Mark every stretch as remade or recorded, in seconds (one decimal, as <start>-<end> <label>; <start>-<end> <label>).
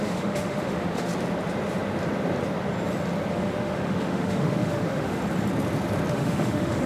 0.0-1.1 remade; 1.1-3.3 recorded; 3.3-5.2 remade; 5.2-6.1 recorded; 6.1-6.9 remade